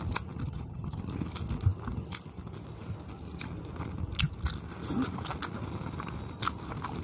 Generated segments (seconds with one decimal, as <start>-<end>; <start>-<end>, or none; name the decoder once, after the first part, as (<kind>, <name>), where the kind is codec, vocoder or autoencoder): 0.4-1.0 (vocoder, HiFi-GAN)